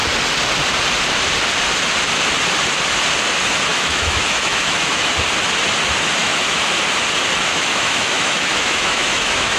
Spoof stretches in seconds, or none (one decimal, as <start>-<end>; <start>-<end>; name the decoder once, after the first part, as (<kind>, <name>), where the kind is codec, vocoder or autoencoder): 3.7-5.1 (autoencoder, DAC-VAE); 6.2-6.7; 7.5-9.6